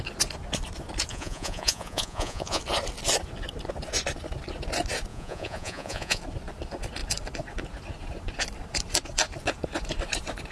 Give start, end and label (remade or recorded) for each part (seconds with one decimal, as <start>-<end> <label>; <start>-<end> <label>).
0.0-1.1 recorded; 1.1-2.6 remade; 2.6-5.1 recorded; 5.1-6.2 remade; 6.2-10.5 recorded